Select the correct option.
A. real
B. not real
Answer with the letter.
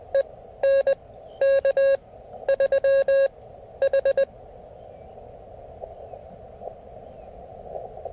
A